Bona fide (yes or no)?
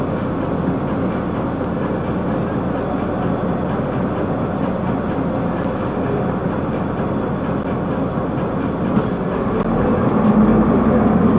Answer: yes